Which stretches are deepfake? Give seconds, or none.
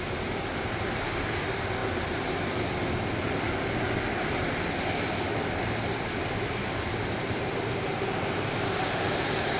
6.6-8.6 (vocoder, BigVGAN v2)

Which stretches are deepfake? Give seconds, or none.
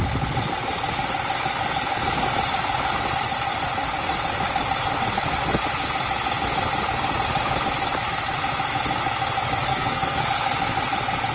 9.7-10.2 (codec, SNAC)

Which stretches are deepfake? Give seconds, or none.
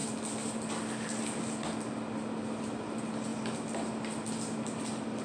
none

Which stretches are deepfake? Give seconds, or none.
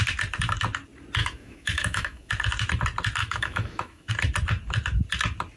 1.2-2.3 (autoencoder, DAC-VAE); 3.2-4.1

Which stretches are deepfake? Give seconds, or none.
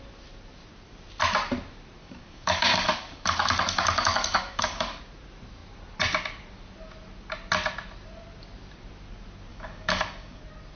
2.0-5.0 (codec, DAC); 9.5-10.4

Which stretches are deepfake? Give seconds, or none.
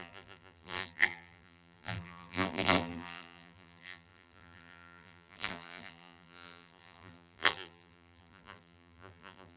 0.0-9.6 (vocoder, BigVGAN v2)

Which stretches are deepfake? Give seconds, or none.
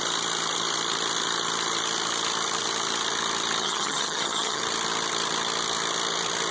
3.6-4.6 (vocoder, HiFi-GAN)